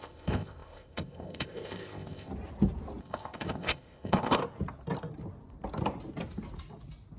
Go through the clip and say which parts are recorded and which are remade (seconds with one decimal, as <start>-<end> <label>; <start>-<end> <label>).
0.0-2.3 remade; 2.3-3.0 recorded; 3.0-4.4 remade; 4.4-7.2 recorded

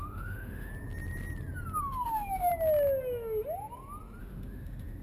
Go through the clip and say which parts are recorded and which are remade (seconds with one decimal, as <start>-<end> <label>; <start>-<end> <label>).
0.0-0.7 remade; 0.7-1.8 recorded; 1.8-2.5 remade; 2.5-4.2 recorded; 4.2-5.0 remade

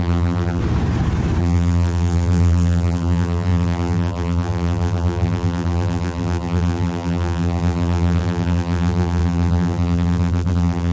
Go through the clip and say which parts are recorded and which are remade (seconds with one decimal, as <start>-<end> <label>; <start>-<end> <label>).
0.0-0.6 remade; 0.6-1.4 recorded; 1.4-10.9 remade

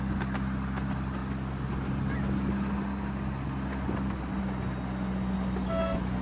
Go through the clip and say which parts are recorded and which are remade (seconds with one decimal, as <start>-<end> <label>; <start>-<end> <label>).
0.0-6.2 recorded

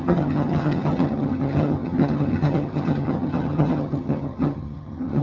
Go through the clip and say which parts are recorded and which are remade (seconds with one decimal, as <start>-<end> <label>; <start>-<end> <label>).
0.0-5.2 remade

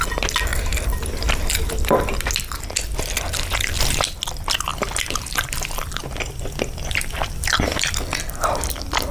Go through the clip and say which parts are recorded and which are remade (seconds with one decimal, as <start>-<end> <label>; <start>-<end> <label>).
0.0-4.7 recorded; 4.7-5.6 remade; 5.6-9.1 recorded

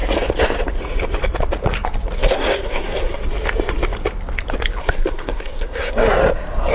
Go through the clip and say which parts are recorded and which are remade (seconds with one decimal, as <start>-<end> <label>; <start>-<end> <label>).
0.0-2.2 recorded; 2.2-3.2 remade; 3.2-4.8 recorded; 4.8-6.2 remade; 6.2-6.7 recorded

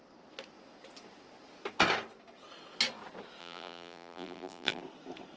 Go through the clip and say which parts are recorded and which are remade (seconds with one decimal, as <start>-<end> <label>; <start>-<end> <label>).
0.0-3.4 recorded; 3.4-4.8 remade; 4.8-5.4 recorded